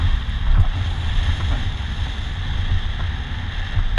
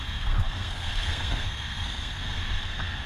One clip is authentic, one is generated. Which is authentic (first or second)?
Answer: first